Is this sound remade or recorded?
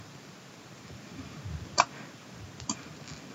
recorded